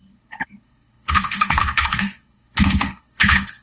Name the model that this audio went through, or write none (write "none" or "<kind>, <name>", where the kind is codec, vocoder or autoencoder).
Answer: codec, HILCodec